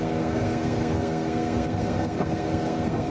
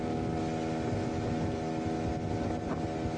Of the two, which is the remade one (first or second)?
first